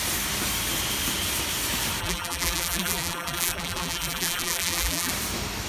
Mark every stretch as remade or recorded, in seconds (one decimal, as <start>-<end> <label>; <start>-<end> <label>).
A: 0.0-2.0 recorded; 2.0-5.1 remade; 5.1-5.7 recorded